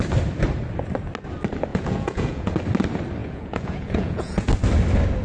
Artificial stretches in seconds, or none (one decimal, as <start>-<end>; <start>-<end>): 1.7-2.5; 3.2-4.5

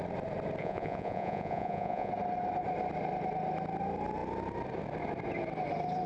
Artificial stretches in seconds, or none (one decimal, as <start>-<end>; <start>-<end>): 0.6-2.1

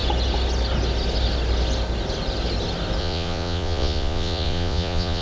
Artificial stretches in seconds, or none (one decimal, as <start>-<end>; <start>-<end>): 3.0-5.2